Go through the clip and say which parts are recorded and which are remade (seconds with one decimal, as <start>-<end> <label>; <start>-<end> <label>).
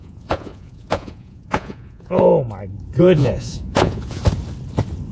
0.0-2.3 remade; 2.3-3.0 recorded; 3.0-4.2 remade; 4.2-5.1 recorded